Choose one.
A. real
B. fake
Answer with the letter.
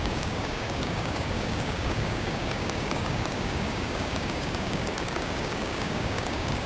B